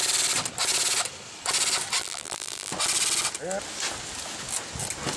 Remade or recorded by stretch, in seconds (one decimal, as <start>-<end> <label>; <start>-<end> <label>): 0.0-2.0 recorded; 2.0-2.7 remade; 2.7-5.2 recorded